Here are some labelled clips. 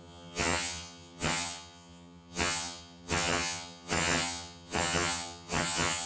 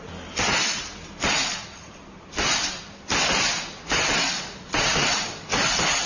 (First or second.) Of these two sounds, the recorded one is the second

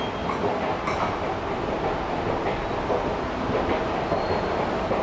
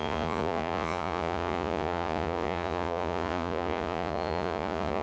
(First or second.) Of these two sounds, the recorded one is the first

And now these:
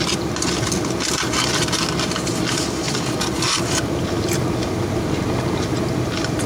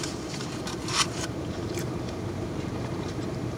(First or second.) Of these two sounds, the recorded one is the first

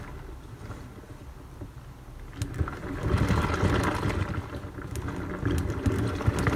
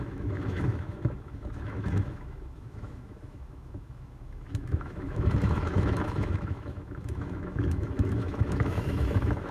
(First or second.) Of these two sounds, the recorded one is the first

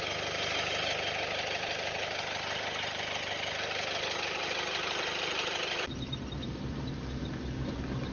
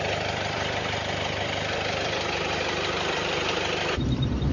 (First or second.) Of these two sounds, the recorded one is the first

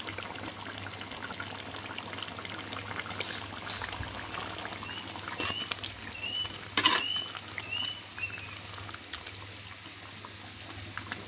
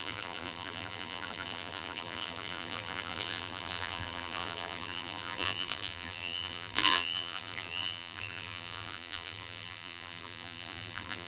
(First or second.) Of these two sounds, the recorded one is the first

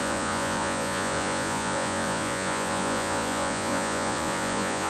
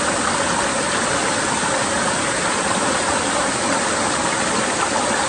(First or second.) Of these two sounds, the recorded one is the second